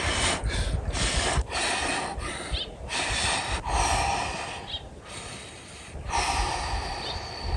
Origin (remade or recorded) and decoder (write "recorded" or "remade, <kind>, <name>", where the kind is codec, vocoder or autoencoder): recorded